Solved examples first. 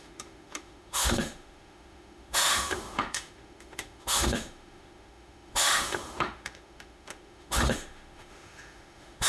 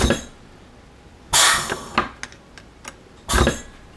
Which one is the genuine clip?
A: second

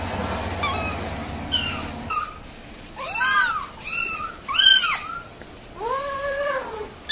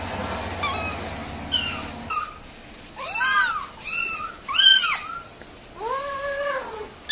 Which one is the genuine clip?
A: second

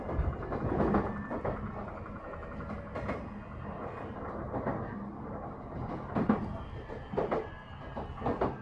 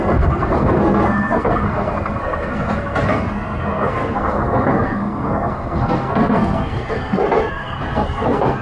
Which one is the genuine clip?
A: first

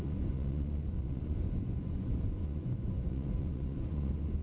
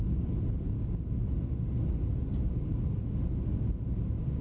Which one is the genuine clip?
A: second